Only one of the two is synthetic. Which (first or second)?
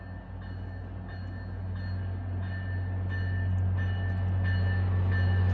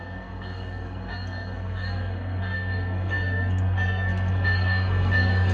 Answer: second